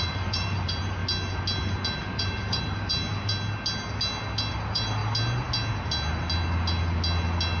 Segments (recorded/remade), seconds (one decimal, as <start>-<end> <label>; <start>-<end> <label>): 0.0-1.0 remade; 1.0-2.0 recorded; 2.0-2.9 remade; 2.9-4.5 recorded; 4.5-5.0 remade; 5.0-7.6 recorded